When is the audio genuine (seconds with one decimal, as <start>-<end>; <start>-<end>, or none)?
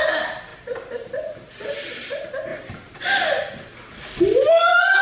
0.0-5.0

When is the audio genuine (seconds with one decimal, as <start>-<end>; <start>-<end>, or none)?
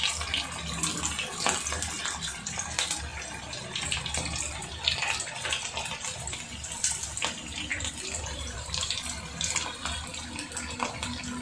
0.0-7.7; 8.9-11.4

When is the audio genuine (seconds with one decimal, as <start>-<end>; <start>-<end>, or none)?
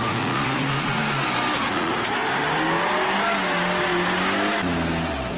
1.0-1.6; 2.2-5.4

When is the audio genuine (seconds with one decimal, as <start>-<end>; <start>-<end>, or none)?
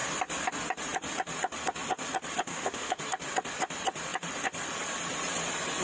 0.0-2.5; 3.0-5.8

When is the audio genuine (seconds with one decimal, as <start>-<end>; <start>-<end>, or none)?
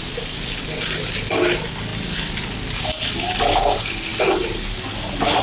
0.0-5.4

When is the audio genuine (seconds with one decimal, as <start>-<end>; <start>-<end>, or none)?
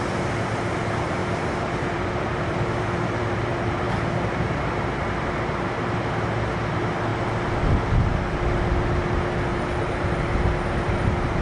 0.0-1.2; 5.7-9.5; 10.1-11.4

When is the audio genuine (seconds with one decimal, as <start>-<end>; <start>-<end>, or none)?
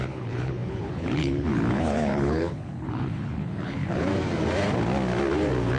4.1-5.8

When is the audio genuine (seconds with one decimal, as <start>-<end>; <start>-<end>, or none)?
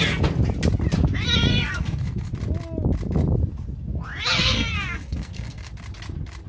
0.0-1.5; 2.3-4.4; 5.7-6.5